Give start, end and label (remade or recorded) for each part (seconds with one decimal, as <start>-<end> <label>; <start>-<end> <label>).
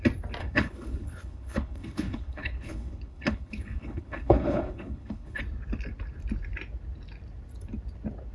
0.0-0.4 recorded; 0.4-5.4 remade; 5.4-8.3 recorded